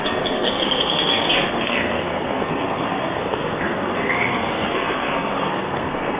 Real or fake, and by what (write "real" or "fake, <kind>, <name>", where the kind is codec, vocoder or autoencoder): fake, codec, SNAC